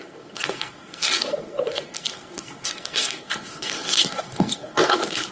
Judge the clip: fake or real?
fake